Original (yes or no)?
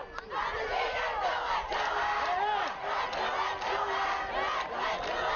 yes